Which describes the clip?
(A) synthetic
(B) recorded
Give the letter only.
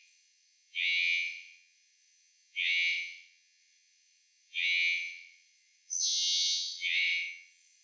A